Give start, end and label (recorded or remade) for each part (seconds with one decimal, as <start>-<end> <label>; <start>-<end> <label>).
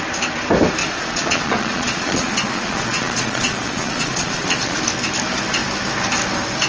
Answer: 0.0-0.8 recorded; 0.8-4.8 remade; 4.8-6.7 recorded